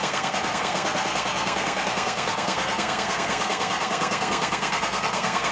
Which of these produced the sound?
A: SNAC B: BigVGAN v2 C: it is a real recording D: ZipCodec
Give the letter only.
A